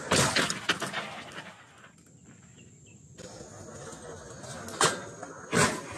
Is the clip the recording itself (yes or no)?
yes